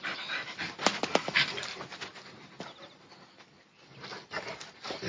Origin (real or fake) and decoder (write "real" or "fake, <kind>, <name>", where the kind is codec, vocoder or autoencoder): real